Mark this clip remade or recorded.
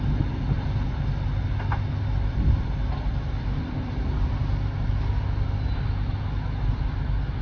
recorded